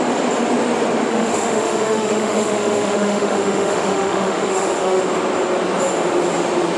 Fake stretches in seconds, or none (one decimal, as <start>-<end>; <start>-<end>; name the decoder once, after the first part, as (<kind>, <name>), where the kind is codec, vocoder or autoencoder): 1.1-5.0 (autoencoder, DAC-VAE)